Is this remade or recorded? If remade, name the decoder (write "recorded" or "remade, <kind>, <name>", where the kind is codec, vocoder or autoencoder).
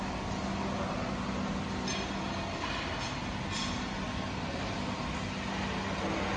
recorded